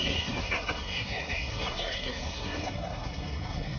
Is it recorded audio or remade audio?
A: remade